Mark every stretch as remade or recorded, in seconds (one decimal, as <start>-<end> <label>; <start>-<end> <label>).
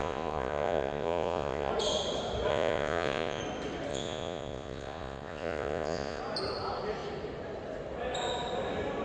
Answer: 0.0-1.7 remade; 1.7-2.5 recorded; 2.5-3.4 remade; 3.4-3.9 recorded; 3.9-6.2 remade; 6.2-9.0 recorded